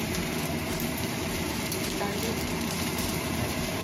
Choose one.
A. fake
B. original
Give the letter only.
A